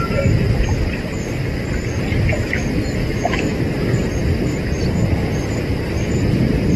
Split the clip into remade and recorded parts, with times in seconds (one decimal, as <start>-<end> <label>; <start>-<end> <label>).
0.0-3.0 recorded; 3.0-3.6 remade; 3.6-6.8 recorded